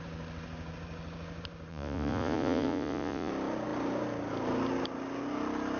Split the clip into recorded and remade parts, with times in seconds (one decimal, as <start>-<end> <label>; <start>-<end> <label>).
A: 0.0-1.7 recorded; 1.7-3.3 remade; 3.3-5.8 recorded